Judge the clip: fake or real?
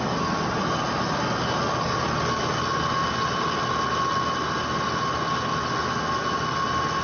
real